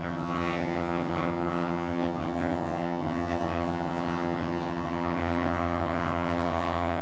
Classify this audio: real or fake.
fake